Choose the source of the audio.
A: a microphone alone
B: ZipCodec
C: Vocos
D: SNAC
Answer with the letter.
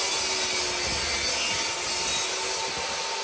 A